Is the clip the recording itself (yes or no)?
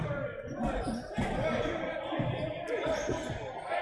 yes